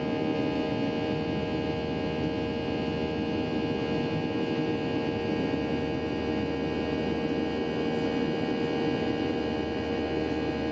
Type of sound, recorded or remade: recorded